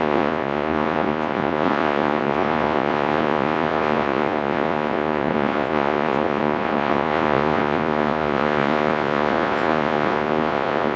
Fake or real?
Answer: fake